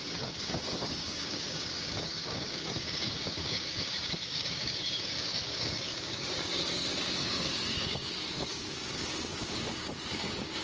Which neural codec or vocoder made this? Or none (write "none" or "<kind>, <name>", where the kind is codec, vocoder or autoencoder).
codec, DAC